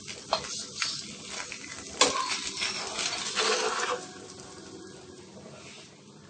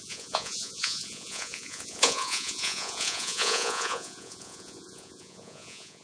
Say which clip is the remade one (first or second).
second